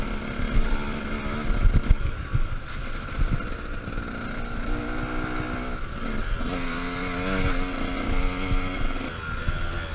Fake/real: real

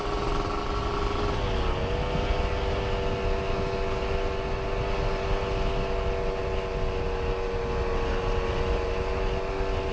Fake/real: real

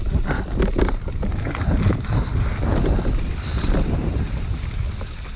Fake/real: real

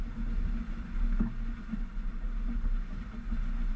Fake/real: real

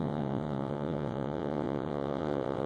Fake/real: fake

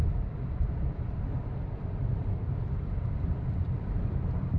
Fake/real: fake